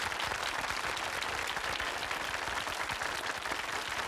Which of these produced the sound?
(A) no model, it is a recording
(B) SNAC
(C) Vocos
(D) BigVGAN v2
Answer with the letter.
A